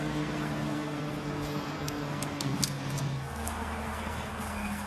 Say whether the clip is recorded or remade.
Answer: remade